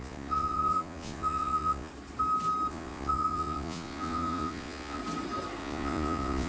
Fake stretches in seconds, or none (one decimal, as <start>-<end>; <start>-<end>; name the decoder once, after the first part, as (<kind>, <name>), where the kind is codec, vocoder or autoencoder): 0.0-1.9 (vocoder, Vocos); 2.7-5.0; 5.6-6.5